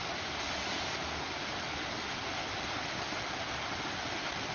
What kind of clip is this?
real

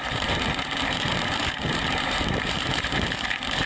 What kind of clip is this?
fake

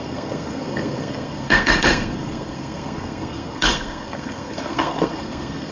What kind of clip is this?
fake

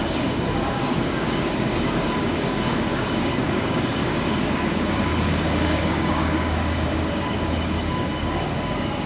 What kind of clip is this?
fake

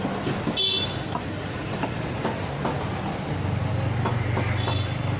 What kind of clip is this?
real